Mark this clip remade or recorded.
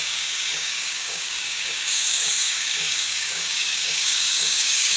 remade